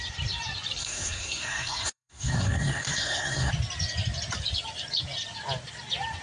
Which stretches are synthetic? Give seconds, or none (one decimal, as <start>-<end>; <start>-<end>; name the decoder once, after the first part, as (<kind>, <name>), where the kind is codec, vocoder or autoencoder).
0.8-3.5 (codec, SNAC)